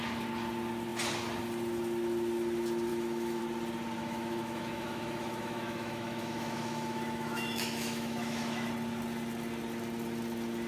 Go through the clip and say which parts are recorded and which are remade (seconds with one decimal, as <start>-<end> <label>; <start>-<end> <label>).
0.0-2.9 recorded; 2.9-3.4 remade; 3.4-4.0 recorded; 4.0-8.7 remade; 8.7-10.7 recorded